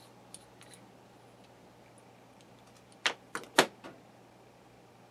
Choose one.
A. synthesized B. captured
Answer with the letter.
B